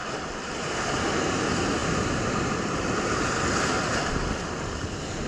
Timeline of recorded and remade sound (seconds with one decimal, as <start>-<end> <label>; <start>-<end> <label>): 0.0-5.3 recorded